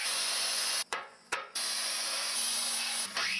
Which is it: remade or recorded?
remade